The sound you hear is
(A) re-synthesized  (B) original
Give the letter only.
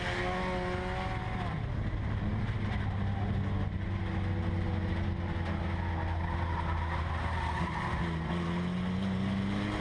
B